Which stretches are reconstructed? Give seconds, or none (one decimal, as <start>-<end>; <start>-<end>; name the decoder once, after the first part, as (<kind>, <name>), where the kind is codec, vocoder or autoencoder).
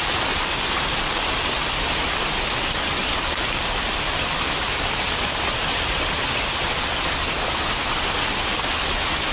none